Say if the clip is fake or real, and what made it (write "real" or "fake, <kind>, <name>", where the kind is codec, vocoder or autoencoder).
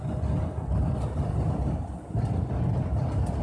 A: real